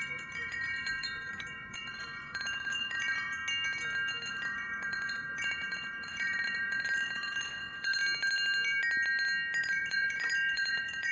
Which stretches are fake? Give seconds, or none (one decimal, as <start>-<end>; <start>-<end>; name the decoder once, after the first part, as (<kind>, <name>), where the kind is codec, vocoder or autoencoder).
0.0-3.4 (vocoder, Vocos); 4.3-8.0; 9.6-11.1